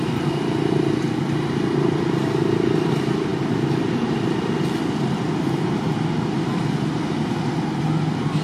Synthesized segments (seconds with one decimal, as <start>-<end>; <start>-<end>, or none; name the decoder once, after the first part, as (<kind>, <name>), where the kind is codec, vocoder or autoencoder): none

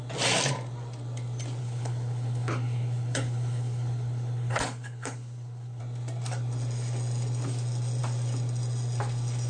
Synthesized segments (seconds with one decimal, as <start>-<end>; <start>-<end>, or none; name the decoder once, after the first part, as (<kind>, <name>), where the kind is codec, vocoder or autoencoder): 1.6-5.8 (codec, HILCodec)

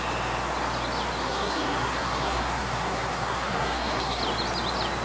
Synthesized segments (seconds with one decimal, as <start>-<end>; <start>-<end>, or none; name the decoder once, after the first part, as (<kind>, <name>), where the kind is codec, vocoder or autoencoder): 1.2-4.2 (codec, SNAC)